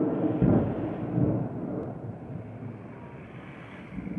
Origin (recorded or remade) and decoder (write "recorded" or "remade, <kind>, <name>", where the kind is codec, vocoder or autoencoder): recorded